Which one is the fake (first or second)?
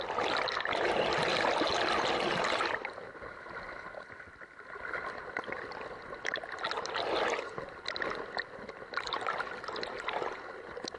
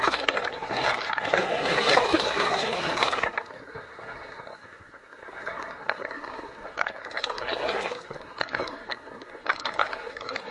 second